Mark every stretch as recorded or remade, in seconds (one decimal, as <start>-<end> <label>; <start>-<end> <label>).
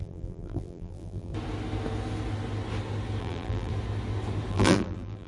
0.0-1.3 remade; 1.3-3.2 recorded; 3.2-3.7 remade; 3.7-4.5 recorded; 4.5-5.3 remade